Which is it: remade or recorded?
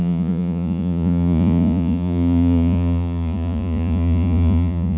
remade